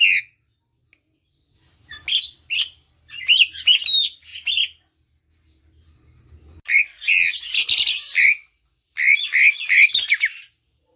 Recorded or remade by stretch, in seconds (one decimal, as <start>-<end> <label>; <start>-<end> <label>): 0.0-11.0 recorded